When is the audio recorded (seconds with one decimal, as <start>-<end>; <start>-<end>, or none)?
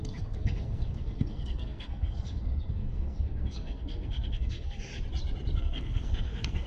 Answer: 4.9-5.6